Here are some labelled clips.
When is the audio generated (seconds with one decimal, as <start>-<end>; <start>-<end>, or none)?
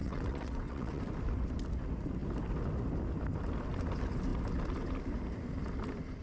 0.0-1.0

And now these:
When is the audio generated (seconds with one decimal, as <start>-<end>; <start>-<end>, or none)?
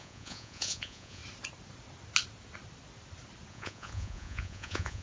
0.0-1.2; 3.5-5.0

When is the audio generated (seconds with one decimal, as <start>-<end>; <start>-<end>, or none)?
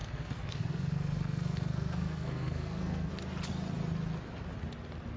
0.0-3.1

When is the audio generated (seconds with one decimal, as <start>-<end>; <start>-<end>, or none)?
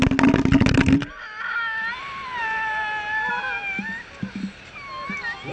none